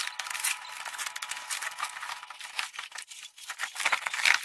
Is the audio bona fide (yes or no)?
yes